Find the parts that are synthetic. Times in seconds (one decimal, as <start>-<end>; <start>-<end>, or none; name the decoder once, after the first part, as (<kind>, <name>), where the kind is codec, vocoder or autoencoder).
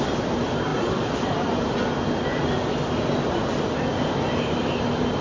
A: none